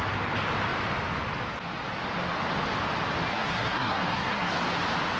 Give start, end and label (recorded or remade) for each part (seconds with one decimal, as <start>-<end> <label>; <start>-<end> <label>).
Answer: 0.0-3.3 recorded; 3.3-4.5 remade; 4.5-5.2 recorded